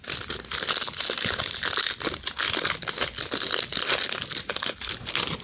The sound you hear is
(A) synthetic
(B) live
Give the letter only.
B